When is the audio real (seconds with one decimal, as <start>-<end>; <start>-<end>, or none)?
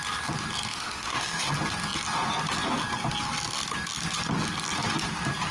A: 0.0-0.7; 1.5-5.5